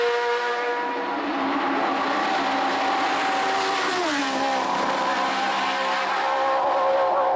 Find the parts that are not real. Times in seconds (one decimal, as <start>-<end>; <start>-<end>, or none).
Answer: none